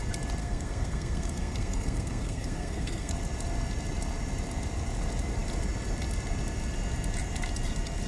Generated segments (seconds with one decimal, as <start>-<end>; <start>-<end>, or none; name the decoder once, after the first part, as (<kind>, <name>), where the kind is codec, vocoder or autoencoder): 0.4-3.1 (codec, SNAC)